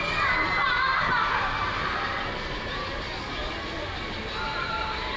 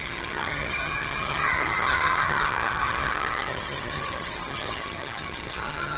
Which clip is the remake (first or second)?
second